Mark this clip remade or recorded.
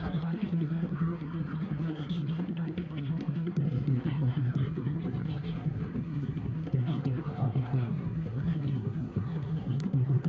remade